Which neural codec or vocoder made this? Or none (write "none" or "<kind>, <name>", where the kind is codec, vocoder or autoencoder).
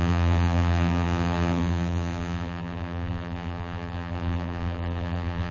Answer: vocoder, BigVGAN v2